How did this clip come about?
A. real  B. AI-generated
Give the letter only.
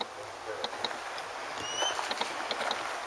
A